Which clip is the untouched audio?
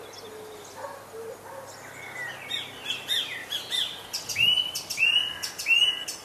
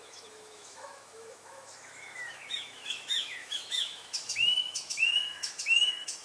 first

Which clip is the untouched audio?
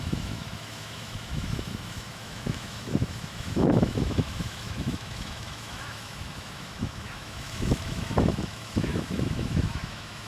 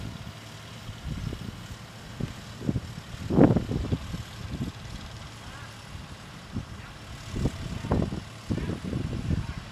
second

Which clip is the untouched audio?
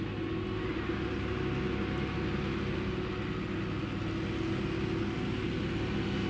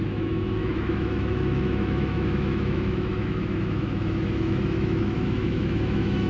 first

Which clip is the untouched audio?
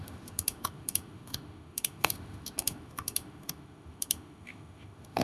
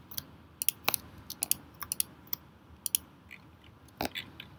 second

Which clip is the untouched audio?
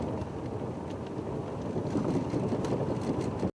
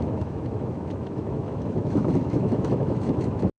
first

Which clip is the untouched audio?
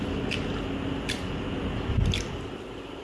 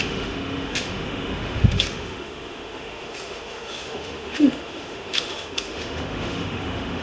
first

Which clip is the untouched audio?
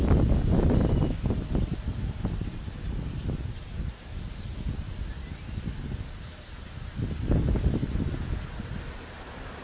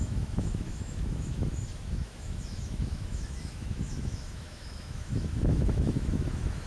first